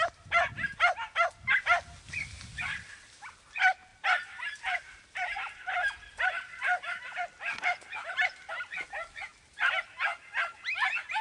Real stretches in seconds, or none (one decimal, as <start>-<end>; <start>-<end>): 0.0-3.9; 8.5-11.2